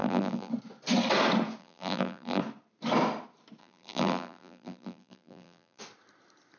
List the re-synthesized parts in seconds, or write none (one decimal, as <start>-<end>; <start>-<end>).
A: 0.0-0.5; 1.6-2.4; 3.6-5.8

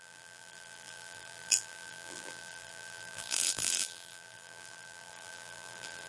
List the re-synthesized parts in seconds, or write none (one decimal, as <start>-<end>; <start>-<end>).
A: 0.0-6.1

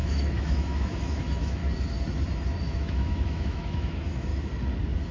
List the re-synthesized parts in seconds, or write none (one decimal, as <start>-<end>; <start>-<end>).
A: 0.0-1.6; 2.6-4.3